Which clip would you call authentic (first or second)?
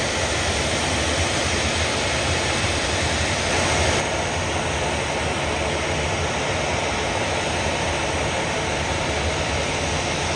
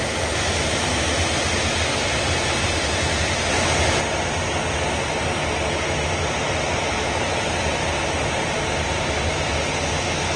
second